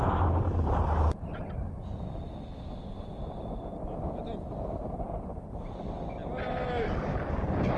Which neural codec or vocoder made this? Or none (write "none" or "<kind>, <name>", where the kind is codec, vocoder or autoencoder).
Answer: none